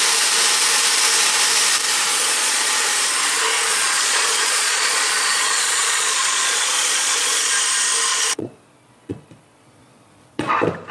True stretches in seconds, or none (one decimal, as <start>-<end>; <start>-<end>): 0.0-2.1; 2.7-3.7; 7.5-8.1; 10.5-10.9